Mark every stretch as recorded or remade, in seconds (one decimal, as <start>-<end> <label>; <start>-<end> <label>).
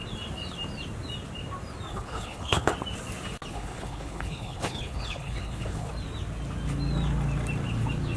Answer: 0.0-1.9 recorded; 1.9-2.7 remade; 2.7-3.5 recorded; 3.5-5.9 remade; 5.9-8.2 recorded